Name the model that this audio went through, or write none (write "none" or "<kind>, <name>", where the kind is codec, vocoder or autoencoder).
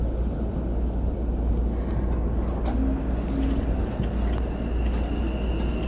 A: none